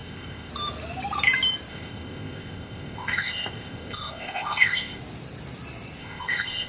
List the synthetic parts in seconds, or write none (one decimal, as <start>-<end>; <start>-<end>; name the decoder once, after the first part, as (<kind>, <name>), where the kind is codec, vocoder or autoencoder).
0.0-0.5 (codec, ZipCodec); 1.7-5.0; 6.0-6.7